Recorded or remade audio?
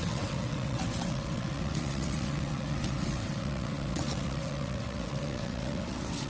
remade